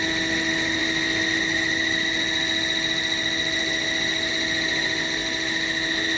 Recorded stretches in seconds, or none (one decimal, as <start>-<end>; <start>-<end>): 0.0-6.2